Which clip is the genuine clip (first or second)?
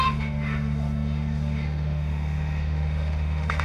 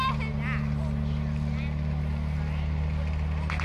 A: second